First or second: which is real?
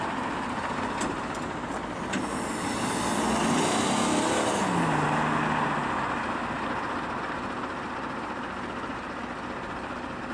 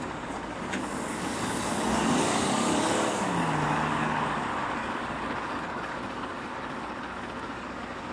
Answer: first